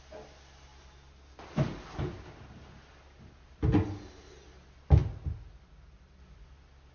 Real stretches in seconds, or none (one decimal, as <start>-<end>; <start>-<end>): 0.0-6.9